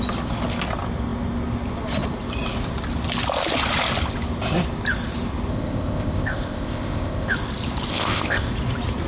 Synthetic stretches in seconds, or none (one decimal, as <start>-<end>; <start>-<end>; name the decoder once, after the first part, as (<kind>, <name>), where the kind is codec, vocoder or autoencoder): 5.5-7.3 (codec, ZipCodec); 7.9-8.5